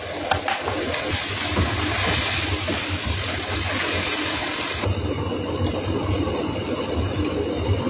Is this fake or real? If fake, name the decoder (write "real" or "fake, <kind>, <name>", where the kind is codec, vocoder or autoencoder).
real